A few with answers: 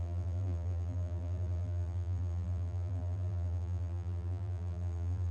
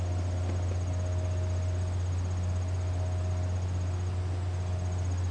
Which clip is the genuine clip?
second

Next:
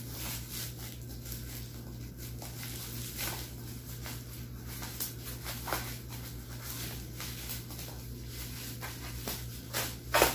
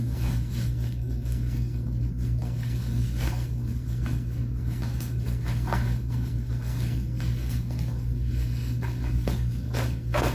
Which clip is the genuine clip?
first